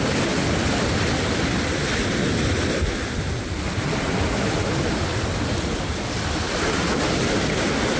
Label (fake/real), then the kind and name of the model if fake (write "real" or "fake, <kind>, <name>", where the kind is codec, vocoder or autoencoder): real